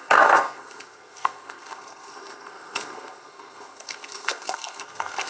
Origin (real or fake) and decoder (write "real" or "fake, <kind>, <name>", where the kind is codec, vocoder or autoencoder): fake, codec, SNAC